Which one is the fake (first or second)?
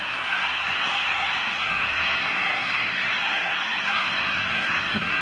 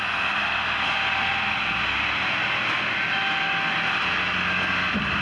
first